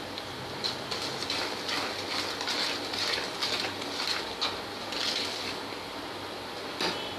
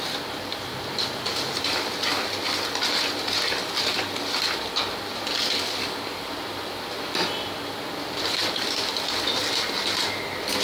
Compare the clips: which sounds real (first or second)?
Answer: first